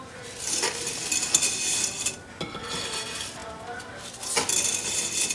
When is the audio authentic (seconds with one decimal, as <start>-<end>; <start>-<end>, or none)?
0.0-5.3